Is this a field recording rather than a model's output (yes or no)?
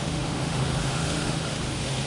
no